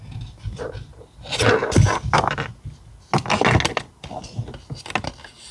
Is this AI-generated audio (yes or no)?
no